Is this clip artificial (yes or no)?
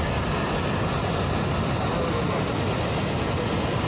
no